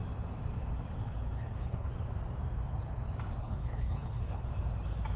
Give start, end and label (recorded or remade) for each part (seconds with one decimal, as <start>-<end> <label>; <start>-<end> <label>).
0.0-1.0 recorded; 1.0-1.9 remade; 1.9-3.4 recorded; 3.4-4.5 remade; 4.5-5.2 recorded